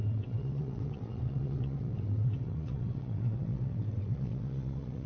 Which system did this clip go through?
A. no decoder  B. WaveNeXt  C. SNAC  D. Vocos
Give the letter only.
B